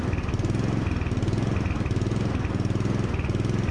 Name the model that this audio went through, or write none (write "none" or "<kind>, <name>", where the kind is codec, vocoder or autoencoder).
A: none